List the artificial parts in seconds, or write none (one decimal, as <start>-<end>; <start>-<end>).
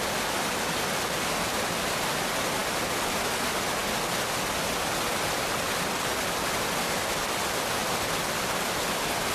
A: none